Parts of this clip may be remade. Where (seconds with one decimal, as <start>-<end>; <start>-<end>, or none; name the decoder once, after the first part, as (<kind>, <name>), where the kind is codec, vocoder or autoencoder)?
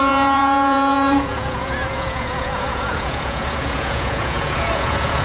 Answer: 0.0-5.2 (vocoder, Vocos)